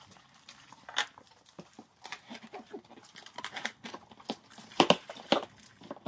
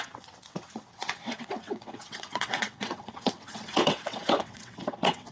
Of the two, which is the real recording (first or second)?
first